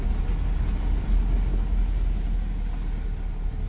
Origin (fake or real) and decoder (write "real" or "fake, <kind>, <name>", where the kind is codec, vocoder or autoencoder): real